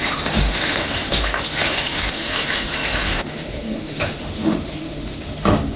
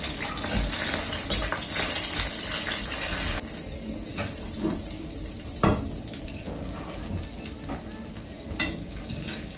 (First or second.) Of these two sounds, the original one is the second